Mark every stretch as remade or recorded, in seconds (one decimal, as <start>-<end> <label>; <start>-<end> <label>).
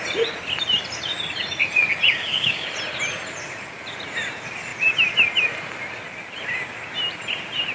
0.0-2.1 recorded; 2.1-2.7 remade; 2.7-7.7 recorded